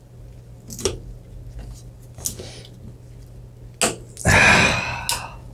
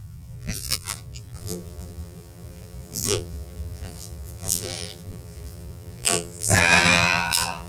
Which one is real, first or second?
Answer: first